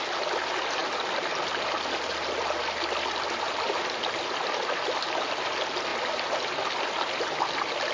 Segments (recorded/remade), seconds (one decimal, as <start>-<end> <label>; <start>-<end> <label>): 0.0-7.9 recorded